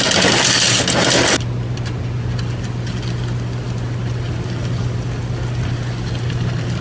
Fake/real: real